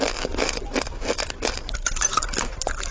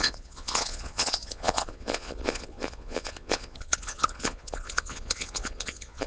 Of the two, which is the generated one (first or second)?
second